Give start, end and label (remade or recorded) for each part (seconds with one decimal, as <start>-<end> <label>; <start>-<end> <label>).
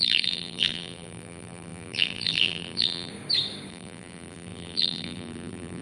0.0-3.1 remade; 3.1-3.7 recorded; 3.7-5.8 remade